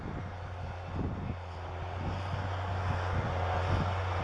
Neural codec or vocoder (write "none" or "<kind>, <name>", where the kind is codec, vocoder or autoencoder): none